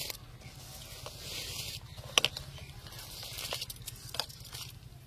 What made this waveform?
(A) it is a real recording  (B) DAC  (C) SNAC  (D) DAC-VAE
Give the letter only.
A